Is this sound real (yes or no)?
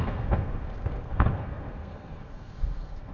no